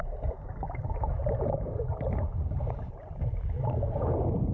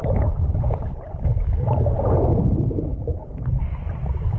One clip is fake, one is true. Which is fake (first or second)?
second